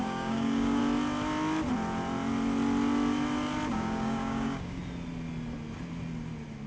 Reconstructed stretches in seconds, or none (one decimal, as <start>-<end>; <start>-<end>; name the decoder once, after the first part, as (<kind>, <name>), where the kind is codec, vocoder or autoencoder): 0.0-0.8 (codec, DAC); 3.7-4.8